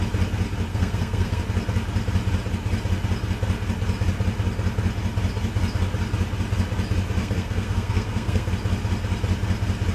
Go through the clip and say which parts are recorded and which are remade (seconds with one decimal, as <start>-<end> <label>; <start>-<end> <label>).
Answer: 0.0-0.7 recorded; 0.7-1.4 remade; 1.4-7.2 recorded; 7.2-8.5 remade; 8.5-9.9 recorded